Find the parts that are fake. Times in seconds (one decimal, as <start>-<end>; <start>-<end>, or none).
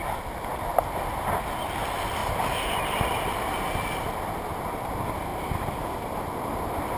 5.3-6.2